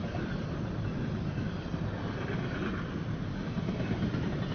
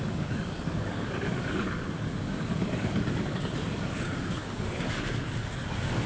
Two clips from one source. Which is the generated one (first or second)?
second